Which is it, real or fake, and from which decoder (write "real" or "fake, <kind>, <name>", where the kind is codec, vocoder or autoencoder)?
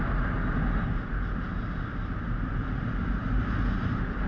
real